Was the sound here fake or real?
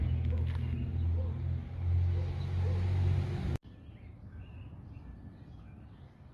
real